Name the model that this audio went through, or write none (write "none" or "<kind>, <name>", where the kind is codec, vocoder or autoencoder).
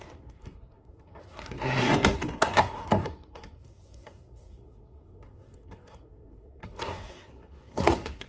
codec, SNAC